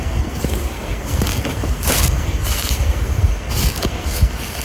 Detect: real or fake fake